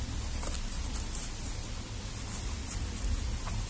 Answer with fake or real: real